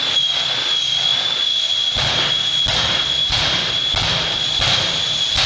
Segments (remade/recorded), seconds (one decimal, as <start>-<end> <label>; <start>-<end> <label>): 0.0-3.2 recorded; 3.2-3.9 remade; 3.9-5.5 recorded